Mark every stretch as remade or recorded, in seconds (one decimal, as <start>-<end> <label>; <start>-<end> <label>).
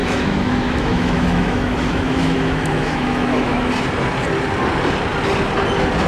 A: 0.0-3.7 remade; 3.7-6.1 recorded